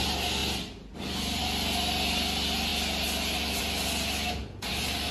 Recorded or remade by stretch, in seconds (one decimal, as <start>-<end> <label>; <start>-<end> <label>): 0.0-5.1 recorded